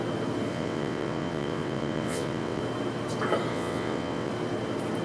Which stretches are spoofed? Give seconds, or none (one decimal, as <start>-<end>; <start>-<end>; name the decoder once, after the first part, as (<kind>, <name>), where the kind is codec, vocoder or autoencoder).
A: 0.5-2.6 (vocoder, WaveNeXt); 3.5-4.3